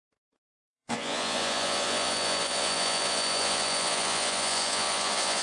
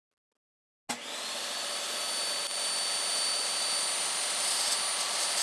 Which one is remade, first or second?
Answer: first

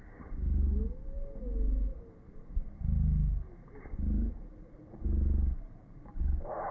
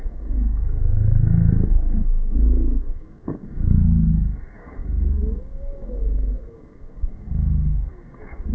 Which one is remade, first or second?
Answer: second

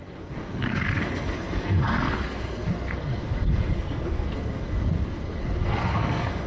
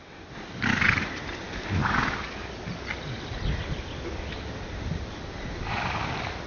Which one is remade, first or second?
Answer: first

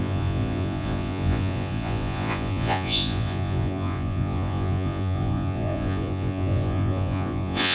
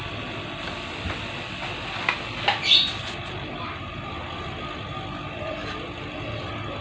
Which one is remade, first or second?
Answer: first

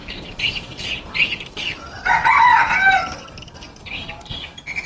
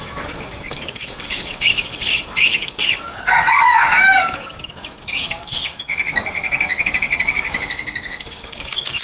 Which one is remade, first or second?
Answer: second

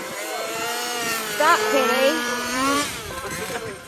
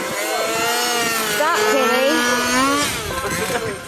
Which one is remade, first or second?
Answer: first